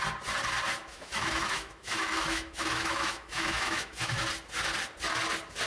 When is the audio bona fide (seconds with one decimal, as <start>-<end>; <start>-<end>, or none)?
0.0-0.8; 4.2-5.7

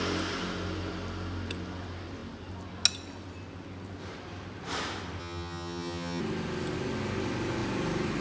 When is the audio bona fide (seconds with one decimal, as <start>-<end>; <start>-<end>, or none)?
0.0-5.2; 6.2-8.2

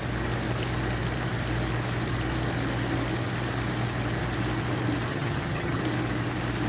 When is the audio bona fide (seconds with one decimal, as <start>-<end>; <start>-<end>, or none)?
0.0-5.1; 5.8-6.7

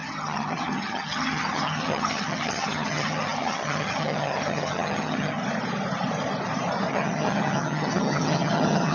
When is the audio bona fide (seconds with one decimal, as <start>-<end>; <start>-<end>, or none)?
5.4-6.9

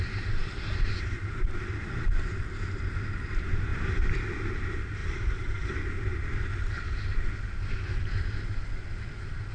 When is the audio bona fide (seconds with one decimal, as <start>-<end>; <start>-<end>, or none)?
0.0-0.4; 2.4-3.7; 4.2-5.0; 5.8-9.5